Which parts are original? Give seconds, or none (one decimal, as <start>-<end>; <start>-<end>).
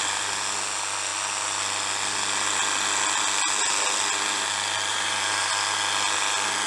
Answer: 0.0-4.9; 5.5-6.7